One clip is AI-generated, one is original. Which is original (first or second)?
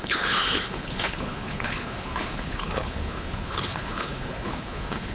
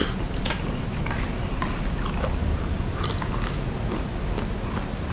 second